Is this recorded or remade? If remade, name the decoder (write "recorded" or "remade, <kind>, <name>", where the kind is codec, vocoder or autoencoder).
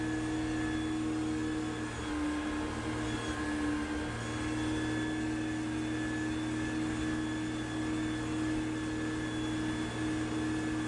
recorded